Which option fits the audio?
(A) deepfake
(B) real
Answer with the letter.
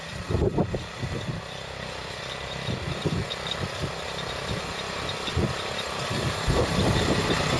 B